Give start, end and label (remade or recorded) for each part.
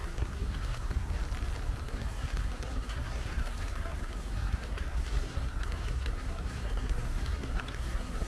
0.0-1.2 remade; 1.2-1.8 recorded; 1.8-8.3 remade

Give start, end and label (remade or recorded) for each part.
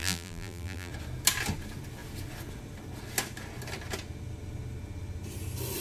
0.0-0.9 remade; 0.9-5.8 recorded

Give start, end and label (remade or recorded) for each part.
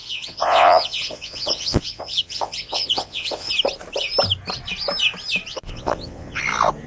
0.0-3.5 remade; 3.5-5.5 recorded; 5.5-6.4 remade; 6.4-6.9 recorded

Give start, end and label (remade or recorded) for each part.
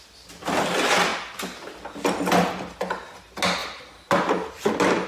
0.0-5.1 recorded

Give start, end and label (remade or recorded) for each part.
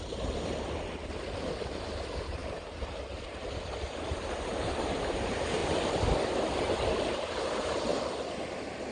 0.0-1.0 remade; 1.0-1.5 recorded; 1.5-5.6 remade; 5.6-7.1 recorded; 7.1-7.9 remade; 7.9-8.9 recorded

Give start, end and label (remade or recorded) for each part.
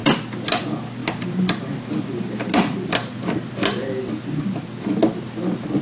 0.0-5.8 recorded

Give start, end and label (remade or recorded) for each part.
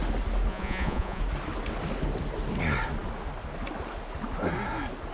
0.0-0.5 recorded; 0.5-1.2 remade; 1.2-5.1 recorded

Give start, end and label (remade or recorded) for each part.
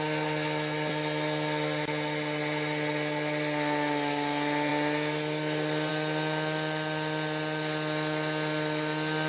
0.0-9.3 recorded